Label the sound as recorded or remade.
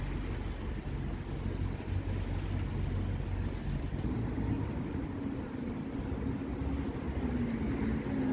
recorded